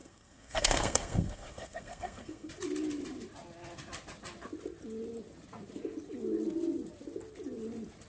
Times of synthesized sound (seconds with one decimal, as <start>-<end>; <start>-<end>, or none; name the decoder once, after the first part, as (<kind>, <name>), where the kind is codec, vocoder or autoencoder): 0.0-2.5 (codec, SNAC)